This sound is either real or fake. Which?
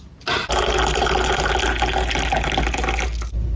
real